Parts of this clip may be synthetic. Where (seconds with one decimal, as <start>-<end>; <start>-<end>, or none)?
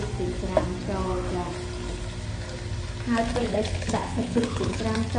3.4-4.8